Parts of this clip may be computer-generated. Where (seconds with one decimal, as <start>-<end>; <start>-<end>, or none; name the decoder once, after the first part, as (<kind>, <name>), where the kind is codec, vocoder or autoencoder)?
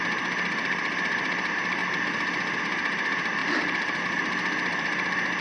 3.4-4.0 (vocoder, BigVGAN v2)